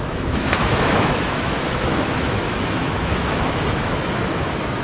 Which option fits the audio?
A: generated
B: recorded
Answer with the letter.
A